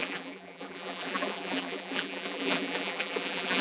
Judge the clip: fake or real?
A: fake